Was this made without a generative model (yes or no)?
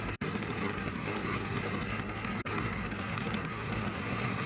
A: no